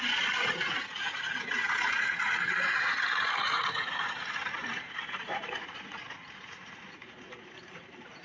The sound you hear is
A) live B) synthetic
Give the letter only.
B